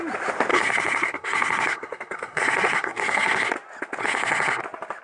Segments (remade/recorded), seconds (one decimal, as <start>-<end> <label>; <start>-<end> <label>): 0.0-0.5 recorded; 0.5-3.5 remade; 3.5-4.0 recorded; 4.0-4.6 remade; 4.6-5.0 recorded